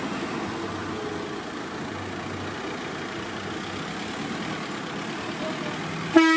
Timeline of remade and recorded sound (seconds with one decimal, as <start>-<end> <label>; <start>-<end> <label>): 0.0-6.4 recorded